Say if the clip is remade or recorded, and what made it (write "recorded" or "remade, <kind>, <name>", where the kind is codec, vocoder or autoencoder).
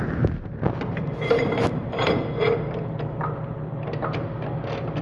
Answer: recorded